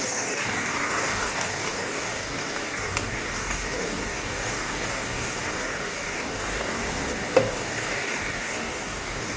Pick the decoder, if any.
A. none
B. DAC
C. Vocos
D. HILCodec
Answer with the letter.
B